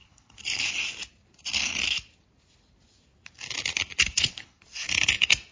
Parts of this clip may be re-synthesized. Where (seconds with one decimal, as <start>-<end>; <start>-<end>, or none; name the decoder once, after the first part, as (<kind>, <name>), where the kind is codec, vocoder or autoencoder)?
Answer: 0.0-0.6 (codec, HILCodec); 4.0-4.6